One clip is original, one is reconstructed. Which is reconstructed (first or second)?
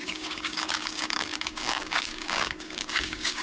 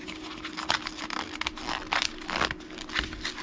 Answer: first